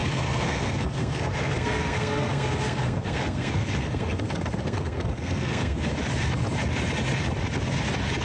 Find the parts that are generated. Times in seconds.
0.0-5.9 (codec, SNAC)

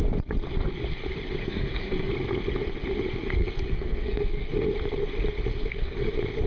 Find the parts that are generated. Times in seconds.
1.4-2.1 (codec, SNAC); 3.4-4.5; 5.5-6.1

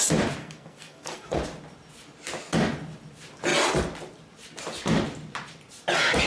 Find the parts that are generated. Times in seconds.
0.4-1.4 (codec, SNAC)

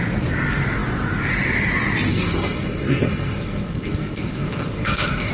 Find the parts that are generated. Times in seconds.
2.1-5.3 (codec, SNAC)

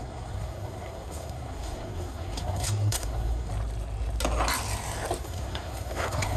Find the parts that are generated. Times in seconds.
0.0-3.5 (codec, SNAC); 5.2-6.4

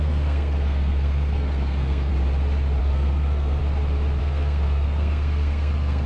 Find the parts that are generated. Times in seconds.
0.0-2.1 (codec, SNAC); 2.8-3.6; 4.2-6.1

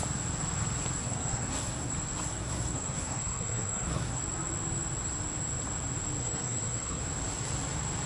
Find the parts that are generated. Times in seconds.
1.0-1.9 (codec, SNAC); 2.3-4.2; 6.2-7.0